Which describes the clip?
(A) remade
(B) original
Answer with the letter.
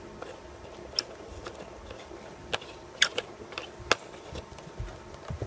B